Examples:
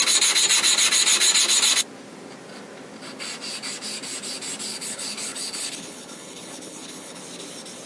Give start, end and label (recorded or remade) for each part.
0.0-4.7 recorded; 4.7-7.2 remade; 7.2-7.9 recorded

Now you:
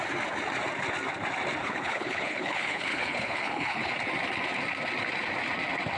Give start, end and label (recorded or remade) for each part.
0.0-1.6 recorded; 1.6-3.9 remade; 3.9-6.0 recorded

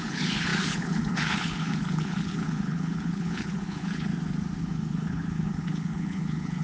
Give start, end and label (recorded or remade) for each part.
0.0-4.1 remade; 4.1-4.6 recorded; 4.6-6.6 remade

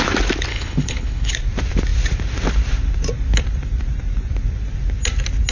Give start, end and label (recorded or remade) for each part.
0.0-0.5 recorded; 0.5-1.3 remade; 1.3-5.5 recorded

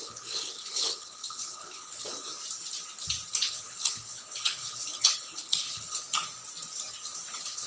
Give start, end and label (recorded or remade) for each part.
0.0-2.3 remade; 2.3-3.3 recorded; 3.3-6.1 remade; 6.1-7.3 recorded; 7.3-7.7 remade

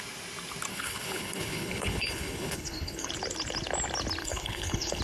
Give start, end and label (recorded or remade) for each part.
0.0-0.7 recorded; 0.7-3.1 remade; 3.1-4.2 recorded; 4.2-5.0 remade